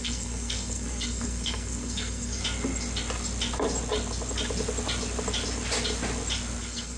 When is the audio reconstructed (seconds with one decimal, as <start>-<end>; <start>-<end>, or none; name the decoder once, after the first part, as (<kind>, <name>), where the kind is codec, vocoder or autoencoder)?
0.0-2.4 (codec, SNAC); 6.6-7.0